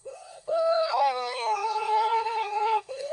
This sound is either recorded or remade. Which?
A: remade